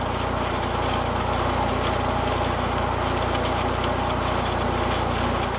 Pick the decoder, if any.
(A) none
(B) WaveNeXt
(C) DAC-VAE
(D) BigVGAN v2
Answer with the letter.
A